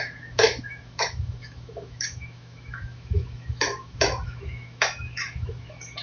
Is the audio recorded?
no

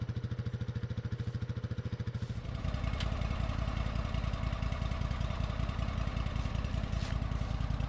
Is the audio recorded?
yes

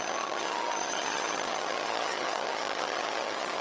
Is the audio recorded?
no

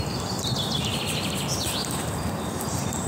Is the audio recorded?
yes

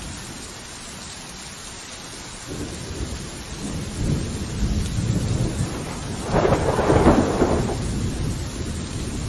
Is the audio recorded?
yes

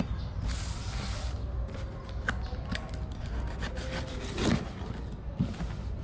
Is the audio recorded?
yes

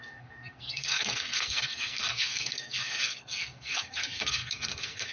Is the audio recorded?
no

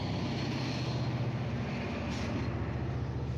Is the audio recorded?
yes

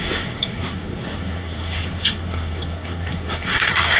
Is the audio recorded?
no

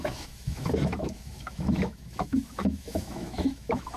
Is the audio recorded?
no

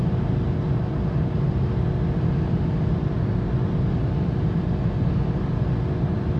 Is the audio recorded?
yes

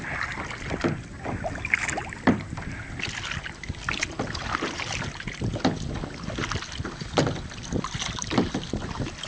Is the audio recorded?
yes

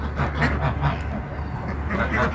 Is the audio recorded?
yes